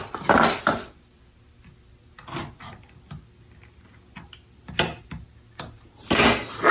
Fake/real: real